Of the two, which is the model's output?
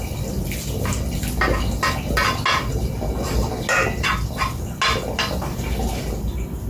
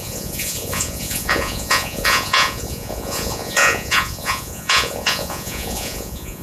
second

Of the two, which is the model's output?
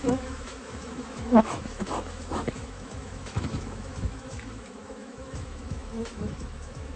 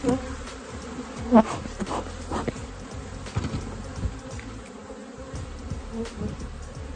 first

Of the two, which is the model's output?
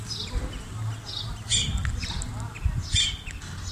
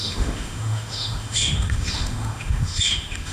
second